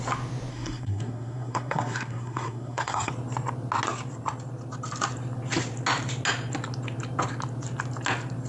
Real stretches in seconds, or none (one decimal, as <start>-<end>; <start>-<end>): 0.0-0.5; 3.1-8.5

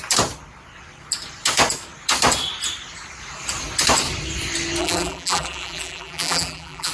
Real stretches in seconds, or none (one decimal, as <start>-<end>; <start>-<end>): 0.0-4.8

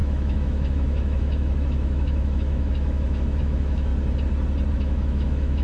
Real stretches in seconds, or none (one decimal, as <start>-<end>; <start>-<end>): 3.9-4.7

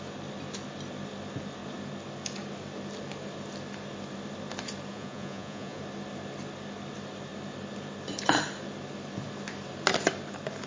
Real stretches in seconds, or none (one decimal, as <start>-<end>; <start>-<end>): 0.0-4.9; 5.8-10.7